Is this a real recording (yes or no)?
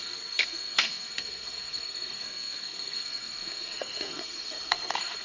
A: no